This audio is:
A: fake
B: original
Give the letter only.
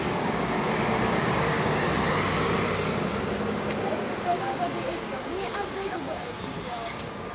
A